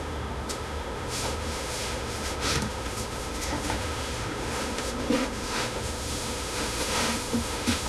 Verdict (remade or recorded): remade